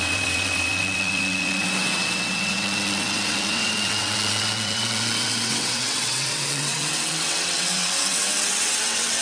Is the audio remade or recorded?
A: remade